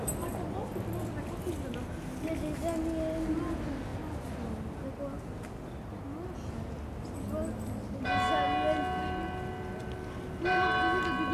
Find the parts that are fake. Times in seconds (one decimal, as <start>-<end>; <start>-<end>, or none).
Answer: none